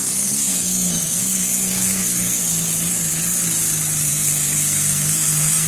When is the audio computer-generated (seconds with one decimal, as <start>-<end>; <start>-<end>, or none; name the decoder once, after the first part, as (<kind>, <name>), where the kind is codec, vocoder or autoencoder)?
0.0-2.4 (codec, SNAC); 4.1-5.7